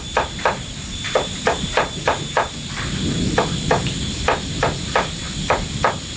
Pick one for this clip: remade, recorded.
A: recorded